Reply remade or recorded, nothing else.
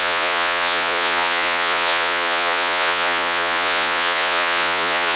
remade